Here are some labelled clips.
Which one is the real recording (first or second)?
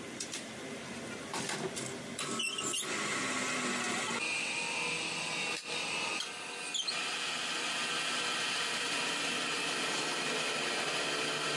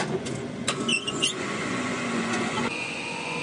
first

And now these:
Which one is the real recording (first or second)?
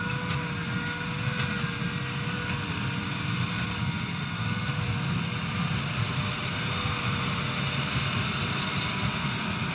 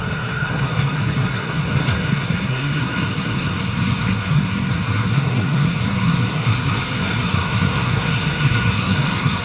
first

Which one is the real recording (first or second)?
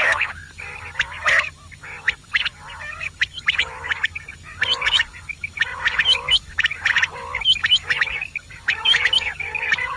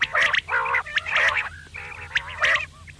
second